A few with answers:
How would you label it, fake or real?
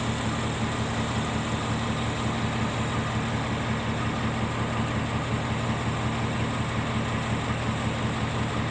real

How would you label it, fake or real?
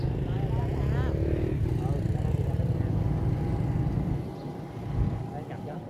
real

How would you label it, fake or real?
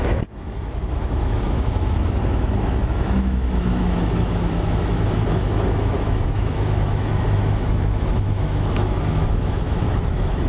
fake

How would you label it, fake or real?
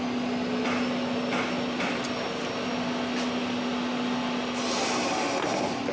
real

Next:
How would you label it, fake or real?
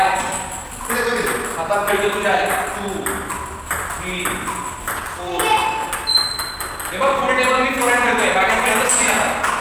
real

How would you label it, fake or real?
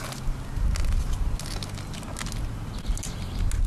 real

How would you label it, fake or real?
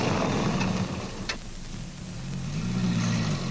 real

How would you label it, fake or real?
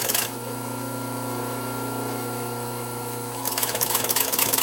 fake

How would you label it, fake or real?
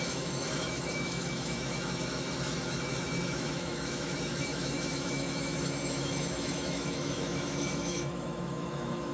fake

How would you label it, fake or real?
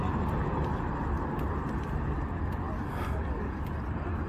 real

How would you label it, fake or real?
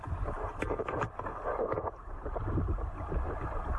real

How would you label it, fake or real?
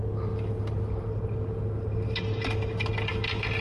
real